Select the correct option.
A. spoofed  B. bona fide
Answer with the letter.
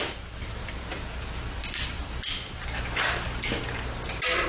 B